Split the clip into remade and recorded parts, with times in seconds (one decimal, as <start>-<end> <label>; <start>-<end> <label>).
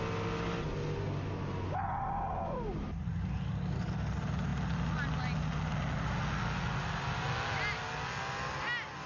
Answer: 0.0-9.1 recorded